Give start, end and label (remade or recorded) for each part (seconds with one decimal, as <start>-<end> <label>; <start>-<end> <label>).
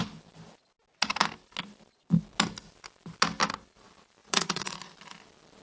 0.0-4.2 recorded; 4.2-4.9 remade; 4.9-5.6 recorded